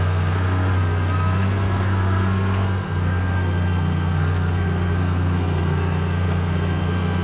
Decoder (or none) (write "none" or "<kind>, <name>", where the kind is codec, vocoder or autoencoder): codec, SNAC